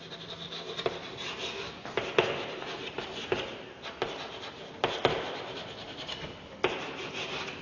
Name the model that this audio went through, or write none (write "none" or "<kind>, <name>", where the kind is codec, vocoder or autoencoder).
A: none